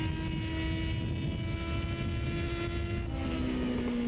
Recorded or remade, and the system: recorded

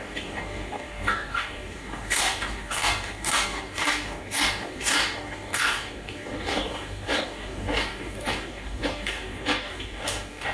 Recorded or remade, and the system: remade, codec, DAC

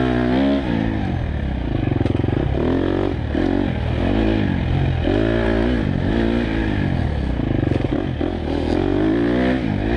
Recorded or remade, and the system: recorded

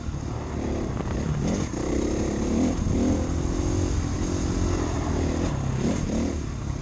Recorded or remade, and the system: recorded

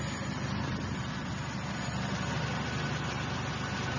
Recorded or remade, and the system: recorded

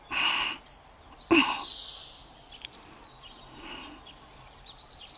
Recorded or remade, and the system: recorded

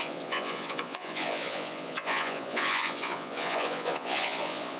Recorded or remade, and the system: remade, vocoder, Vocos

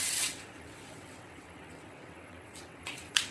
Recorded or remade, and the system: remade, vocoder, WaveNeXt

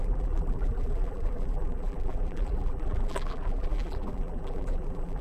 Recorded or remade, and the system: remade, vocoder, BigVGAN v2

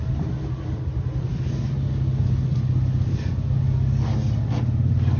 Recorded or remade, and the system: recorded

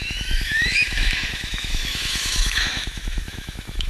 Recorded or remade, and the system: remade, autoencoder, DAC-VAE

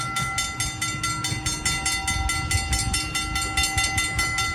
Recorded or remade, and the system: recorded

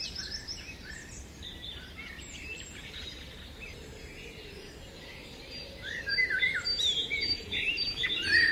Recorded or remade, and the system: remade, vocoder, BigVGAN v2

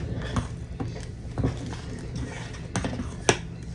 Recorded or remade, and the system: recorded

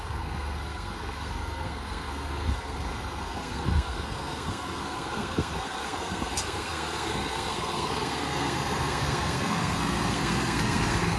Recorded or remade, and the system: remade, codec, SNAC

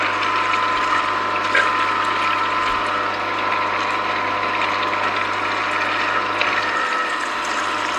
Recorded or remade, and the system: recorded